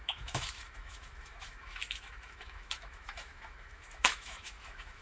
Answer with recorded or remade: remade